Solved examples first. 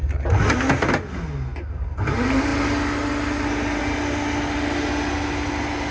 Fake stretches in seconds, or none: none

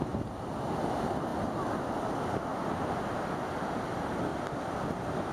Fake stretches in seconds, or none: 4.3-5.3

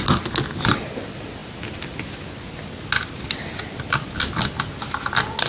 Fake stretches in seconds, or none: none

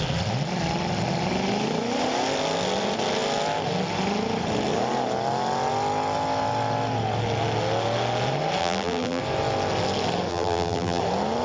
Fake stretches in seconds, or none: 8.6-9.2; 10.3-11.0